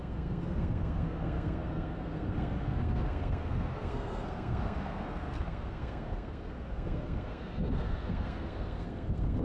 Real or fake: fake